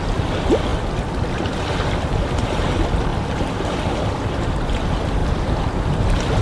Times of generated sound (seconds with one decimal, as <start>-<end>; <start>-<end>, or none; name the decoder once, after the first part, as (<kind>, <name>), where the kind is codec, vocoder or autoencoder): 3.1-4.5 (vocoder, BigVGAN v2)